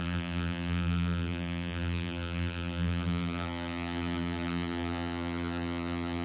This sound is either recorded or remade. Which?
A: remade